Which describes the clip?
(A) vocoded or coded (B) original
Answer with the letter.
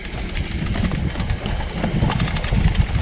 B